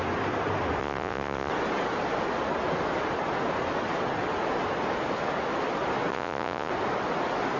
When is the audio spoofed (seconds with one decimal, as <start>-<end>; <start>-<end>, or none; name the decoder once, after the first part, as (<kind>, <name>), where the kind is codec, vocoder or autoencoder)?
0.8-1.5 (vocoder, Vocos); 6.1-6.7